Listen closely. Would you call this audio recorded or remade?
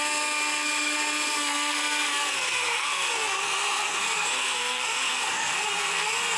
remade